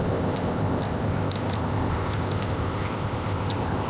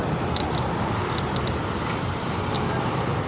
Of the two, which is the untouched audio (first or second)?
second